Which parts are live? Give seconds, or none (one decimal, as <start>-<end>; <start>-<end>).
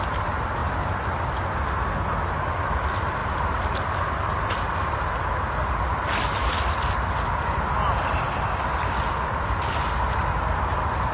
0.0-11.1